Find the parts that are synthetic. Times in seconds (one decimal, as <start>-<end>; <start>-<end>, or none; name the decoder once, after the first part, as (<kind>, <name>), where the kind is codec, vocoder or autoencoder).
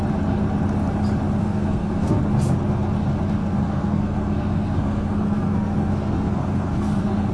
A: 1.4-2.2 (codec, SNAC); 3.4-7.3